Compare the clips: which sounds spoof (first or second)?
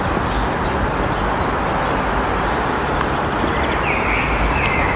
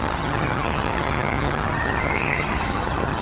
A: second